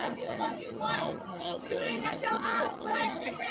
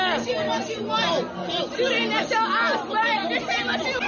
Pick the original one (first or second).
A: second